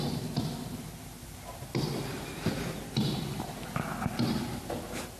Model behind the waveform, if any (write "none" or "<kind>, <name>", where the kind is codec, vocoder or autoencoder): none